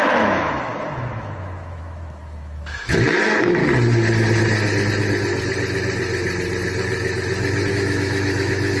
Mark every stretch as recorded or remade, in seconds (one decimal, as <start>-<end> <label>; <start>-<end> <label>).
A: 0.0-3.6 remade; 3.6-7.7 recorded; 7.7-8.8 remade